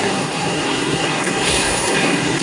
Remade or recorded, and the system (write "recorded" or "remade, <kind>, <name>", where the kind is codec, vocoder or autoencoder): remade, codec, SNAC